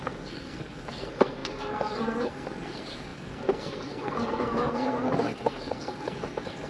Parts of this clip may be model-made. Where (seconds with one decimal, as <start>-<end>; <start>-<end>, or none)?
0.0-6.7